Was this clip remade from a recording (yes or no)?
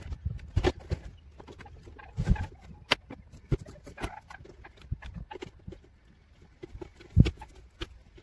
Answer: no